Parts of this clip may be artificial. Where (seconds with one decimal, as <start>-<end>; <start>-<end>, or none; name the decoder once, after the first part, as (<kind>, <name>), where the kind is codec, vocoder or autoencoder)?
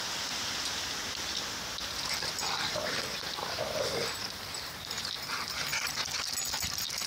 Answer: none